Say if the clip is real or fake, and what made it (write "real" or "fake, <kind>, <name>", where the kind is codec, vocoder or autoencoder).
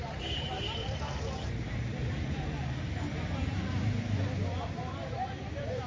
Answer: fake, vocoder, BigVGAN v2